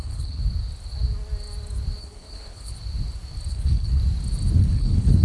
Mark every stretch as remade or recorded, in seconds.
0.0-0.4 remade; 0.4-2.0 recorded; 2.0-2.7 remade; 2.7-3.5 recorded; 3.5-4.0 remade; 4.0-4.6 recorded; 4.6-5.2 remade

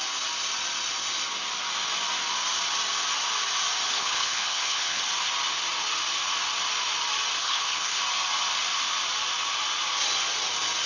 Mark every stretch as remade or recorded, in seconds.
0.0-3.9 recorded; 3.9-5.0 remade; 5.0-7.4 recorded; 7.4-8.0 remade; 8.0-10.9 recorded

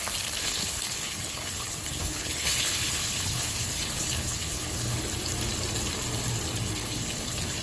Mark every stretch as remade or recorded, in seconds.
0.0-0.4 recorded; 0.4-5.0 remade; 5.0-6.8 recorded; 6.8-7.6 remade

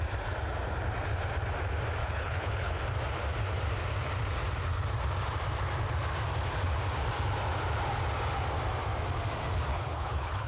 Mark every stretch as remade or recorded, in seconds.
0.0-2.0 recorded; 2.0-2.7 remade; 2.7-9.7 recorded; 9.7-10.5 remade

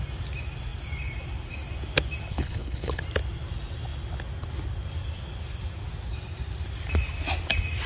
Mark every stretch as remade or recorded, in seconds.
0.0-2.3 recorded; 2.3-3.0 remade; 3.0-7.9 recorded

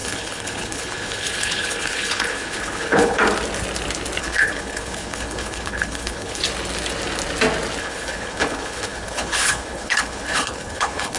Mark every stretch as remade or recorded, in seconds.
0.0-3.2 remade; 3.2-4.2 recorded; 4.2-6.4 remade; 6.4-7.8 recorded; 7.8-11.2 remade